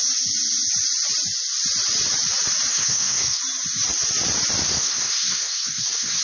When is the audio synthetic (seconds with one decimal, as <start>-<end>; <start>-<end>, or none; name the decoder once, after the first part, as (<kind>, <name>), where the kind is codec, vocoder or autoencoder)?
2.7-3.4 (codec, SNAC); 4.6-6.2